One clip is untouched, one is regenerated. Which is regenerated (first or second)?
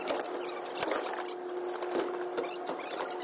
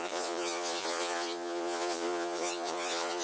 second